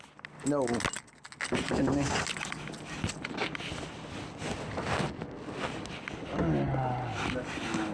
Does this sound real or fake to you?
real